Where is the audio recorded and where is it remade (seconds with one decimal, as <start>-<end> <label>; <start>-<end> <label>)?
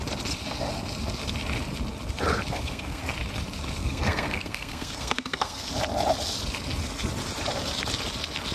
0.0-2.5 recorded; 2.5-3.0 remade; 3.0-3.8 recorded; 3.8-5.7 remade; 5.7-8.5 recorded